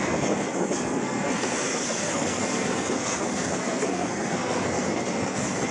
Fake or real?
fake